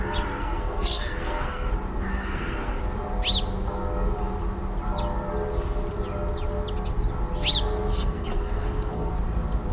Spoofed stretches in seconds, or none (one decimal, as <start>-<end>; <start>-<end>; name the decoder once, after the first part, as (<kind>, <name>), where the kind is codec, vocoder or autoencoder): 0.4-1.7 (codec, SNAC); 2.1-2.8; 7.9-9.1